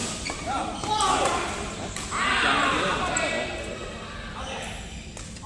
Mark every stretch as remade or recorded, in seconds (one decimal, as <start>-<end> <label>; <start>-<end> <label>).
0.0-5.5 recorded